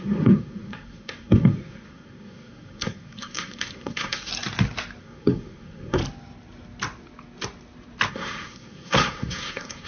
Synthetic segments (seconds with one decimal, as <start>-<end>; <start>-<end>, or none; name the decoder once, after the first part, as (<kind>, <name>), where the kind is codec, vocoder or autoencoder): 0.0-4.3 (codec, SNAC); 5.0-6.0; 8.1-9.9